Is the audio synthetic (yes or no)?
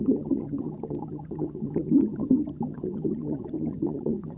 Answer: yes